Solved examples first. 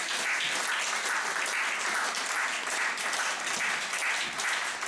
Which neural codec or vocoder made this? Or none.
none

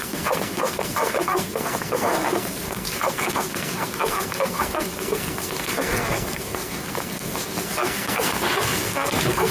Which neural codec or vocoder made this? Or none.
codec, SNAC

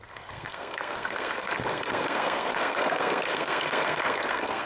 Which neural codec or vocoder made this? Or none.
codec, SNAC